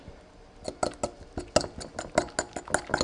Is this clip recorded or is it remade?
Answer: recorded